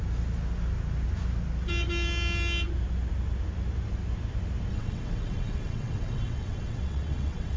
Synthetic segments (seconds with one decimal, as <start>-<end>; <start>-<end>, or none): 4.7-7.6